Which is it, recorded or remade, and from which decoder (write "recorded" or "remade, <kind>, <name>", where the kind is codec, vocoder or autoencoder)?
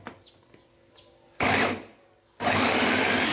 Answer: recorded